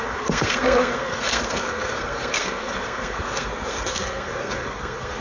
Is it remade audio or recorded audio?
remade